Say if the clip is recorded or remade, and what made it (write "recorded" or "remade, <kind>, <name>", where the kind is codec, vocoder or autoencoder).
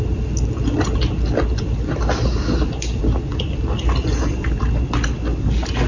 recorded